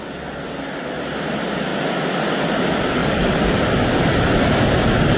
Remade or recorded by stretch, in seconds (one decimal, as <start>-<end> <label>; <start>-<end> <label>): 0.0-5.2 recorded